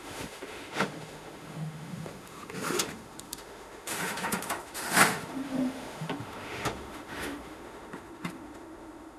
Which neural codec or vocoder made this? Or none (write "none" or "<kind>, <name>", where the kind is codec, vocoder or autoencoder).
autoencoder, DAC-VAE